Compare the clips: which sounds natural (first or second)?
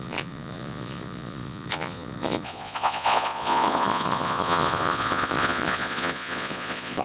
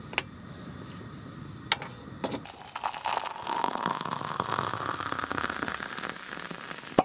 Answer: second